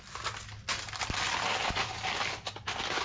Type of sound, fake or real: real